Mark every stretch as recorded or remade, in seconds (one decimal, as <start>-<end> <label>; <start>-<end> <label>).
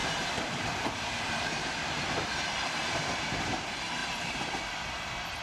0.0-5.4 remade